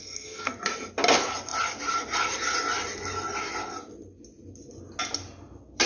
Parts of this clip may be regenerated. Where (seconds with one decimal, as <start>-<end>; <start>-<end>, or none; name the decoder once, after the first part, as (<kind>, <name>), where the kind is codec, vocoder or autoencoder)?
0.0-0.5 (codec, SNAC)